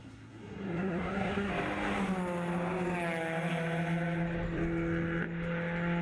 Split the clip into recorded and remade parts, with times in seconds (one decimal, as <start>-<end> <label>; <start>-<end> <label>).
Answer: 0.0-1.5 remade; 1.5-6.0 recorded